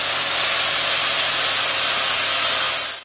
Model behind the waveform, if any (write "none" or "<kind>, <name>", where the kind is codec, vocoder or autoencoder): none